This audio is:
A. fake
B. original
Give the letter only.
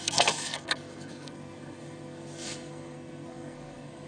A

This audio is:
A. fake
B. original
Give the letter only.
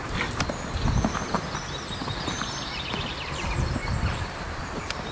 A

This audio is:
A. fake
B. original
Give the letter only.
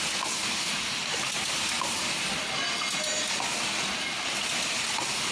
B